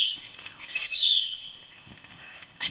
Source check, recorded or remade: remade